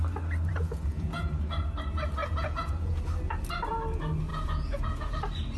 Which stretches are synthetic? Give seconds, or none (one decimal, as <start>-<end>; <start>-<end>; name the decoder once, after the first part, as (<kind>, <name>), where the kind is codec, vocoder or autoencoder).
0.5-1.5 (vocoder, Vocos); 2.2-3.0; 4.3-5.1